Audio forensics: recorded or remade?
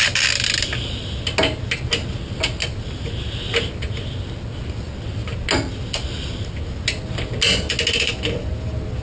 recorded